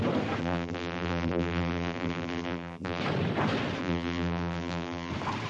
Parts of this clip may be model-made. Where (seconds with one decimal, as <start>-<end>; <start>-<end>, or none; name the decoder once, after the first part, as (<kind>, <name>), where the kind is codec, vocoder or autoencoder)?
0.4-3.0 (vocoder, BigVGAN v2); 3.8-5.1